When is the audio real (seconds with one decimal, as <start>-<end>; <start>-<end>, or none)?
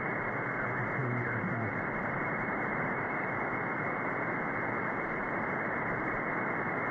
0.0-1.0; 3.3-5.2; 6.1-6.9